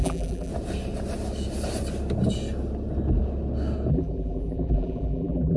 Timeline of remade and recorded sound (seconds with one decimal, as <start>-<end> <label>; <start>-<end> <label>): 0.0-0.5 remade; 0.5-3.9 recorded; 3.9-5.6 remade